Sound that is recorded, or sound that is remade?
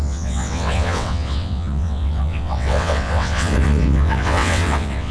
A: remade